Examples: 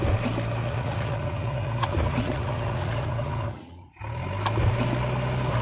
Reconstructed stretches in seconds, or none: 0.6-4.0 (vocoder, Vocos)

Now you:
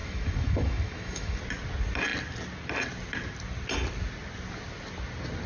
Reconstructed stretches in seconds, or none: 0.0-1.4 (autoencoder, DAC-VAE)